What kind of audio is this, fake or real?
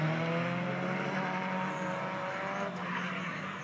real